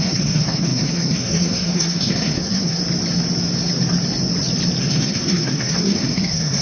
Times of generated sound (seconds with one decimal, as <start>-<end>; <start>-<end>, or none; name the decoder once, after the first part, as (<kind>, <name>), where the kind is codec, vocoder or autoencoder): 0.0-2.8 (codec, SNAC); 4.8-6.6